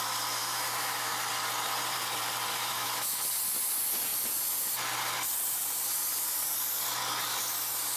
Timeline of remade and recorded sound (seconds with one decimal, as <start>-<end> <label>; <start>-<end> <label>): 0.0-0.4 recorded; 0.4-1.1 remade; 1.1-2.5 recorded; 2.5-3.2 remade; 3.2-8.0 recorded